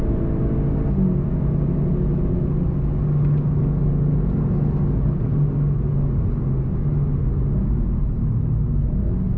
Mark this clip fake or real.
real